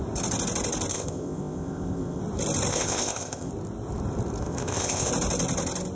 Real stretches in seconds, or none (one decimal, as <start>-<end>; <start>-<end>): 0.0-0.9; 2.2-2.7; 3.5-4.4; 5.1-6.0